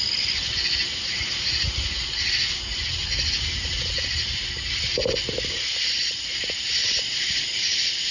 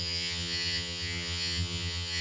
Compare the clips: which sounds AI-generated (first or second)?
second